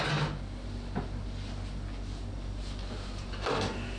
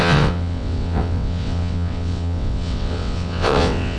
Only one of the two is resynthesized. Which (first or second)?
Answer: second